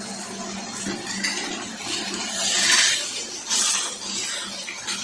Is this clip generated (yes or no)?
no